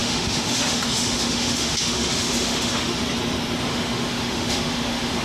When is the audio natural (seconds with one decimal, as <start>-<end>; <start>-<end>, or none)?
3.0-3.6